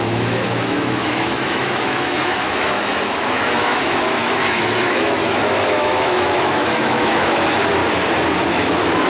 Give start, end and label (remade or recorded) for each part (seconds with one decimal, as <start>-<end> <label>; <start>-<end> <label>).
0.0-7.8 remade; 7.8-8.5 recorded; 8.5-9.1 remade

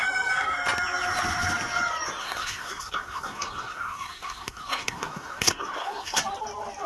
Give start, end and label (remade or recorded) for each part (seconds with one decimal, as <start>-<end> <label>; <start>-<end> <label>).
0.0-2.2 recorded; 2.2-6.2 remade; 6.2-6.9 recorded

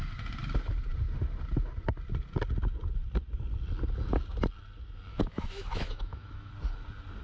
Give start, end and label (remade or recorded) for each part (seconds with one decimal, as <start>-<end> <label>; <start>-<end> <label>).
0.0-5.1 recorded; 5.1-6.5 remade; 6.5-7.2 recorded

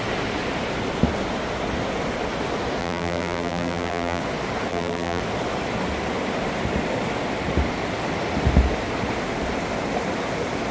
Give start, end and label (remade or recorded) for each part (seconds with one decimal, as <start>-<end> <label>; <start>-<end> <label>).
0.0-2.8 recorded; 2.8-4.2 remade; 4.2-4.7 recorded; 4.7-5.2 remade; 5.2-10.7 recorded

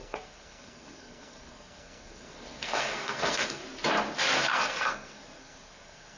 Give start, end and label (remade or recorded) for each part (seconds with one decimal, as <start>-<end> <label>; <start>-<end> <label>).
0.0-3.6 remade; 3.6-4.4 recorded; 4.4-6.2 remade